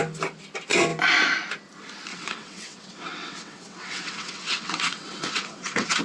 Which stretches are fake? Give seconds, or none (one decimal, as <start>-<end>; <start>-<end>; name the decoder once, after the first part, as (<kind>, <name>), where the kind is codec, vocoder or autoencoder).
2.1-6.0 (vocoder, WaveNeXt)